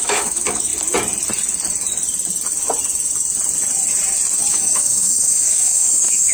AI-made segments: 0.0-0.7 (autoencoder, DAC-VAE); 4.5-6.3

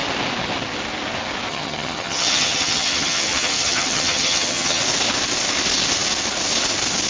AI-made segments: 1.5-4.8 (vocoder, HiFi-GAN)

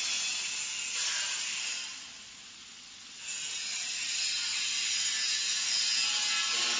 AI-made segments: 2.6-3.2 (vocoder, WaveNeXt)

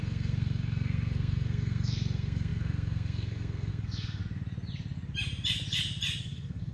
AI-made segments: 0.0-4.2 (codec, SNAC); 6.2-6.7